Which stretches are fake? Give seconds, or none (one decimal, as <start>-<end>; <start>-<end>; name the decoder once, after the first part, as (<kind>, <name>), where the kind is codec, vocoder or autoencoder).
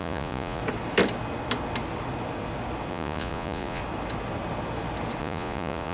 0.0-0.6 (vocoder, Vocos); 2.9-3.8; 5.2-5.9